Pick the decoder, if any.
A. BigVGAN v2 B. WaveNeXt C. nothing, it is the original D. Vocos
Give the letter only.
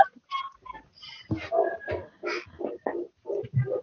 C